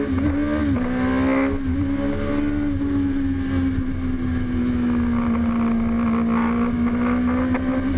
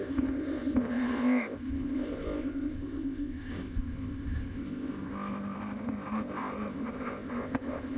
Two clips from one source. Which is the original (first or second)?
first